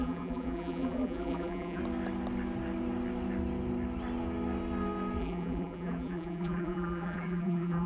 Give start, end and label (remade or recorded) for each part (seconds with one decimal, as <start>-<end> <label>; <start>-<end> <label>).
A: 0.0-1.8 remade; 1.8-5.2 recorded; 5.2-7.9 remade